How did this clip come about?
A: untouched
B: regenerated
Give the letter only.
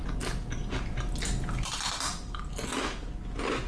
A